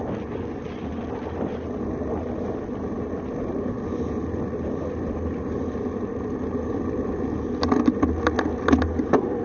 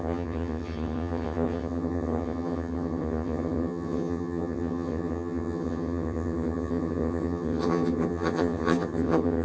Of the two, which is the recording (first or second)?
first